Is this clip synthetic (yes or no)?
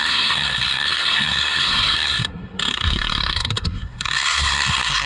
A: yes